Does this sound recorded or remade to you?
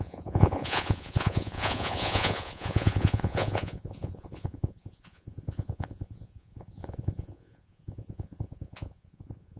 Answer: remade